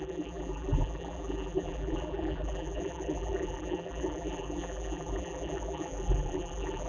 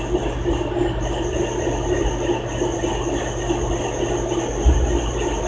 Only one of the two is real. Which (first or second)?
second